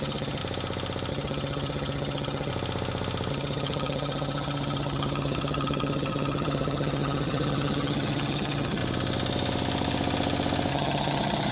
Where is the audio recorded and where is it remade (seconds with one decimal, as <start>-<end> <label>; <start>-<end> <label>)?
0.0-0.4 remade; 0.4-1.1 recorded; 1.1-2.5 remade; 2.5-3.3 recorded; 3.3-8.8 remade; 8.8-10.7 recorded; 10.7-11.5 remade